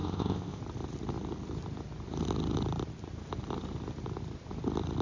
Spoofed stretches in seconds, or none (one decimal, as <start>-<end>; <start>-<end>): 0.0-0.6